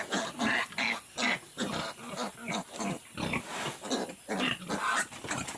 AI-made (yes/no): no